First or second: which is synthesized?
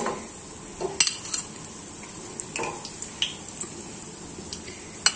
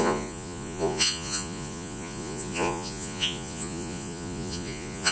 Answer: second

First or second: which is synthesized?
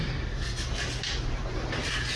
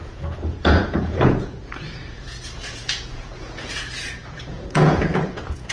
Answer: second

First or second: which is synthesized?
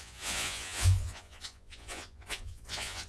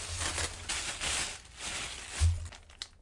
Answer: first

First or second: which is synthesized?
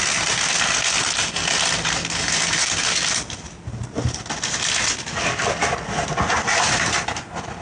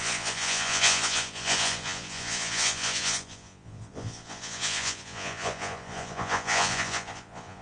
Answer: second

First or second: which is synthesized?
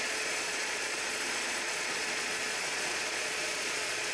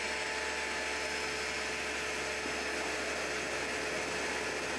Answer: first